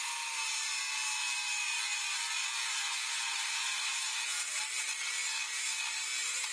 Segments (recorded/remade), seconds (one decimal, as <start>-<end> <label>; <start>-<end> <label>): 0.0-6.5 recorded